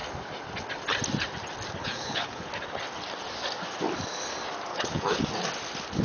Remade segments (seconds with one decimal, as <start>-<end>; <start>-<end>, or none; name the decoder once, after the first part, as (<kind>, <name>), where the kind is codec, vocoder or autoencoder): 1.8-2.5 (codec, HILCodec); 4.7-5.2